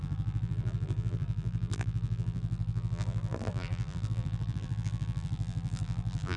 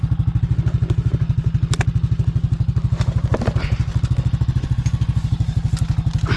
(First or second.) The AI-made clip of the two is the first